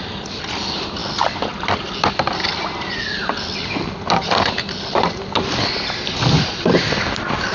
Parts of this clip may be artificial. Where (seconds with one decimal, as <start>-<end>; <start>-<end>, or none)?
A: none